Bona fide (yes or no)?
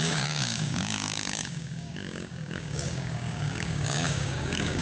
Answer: no